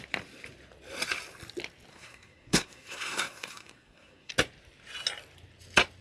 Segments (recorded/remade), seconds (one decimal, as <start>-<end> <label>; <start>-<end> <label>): 0.0-1.9 recorded; 1.9-4.3 remade; 4.3-6.0 recorded